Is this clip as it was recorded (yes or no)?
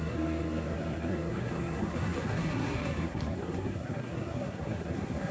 no